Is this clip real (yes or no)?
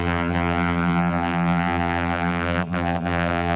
no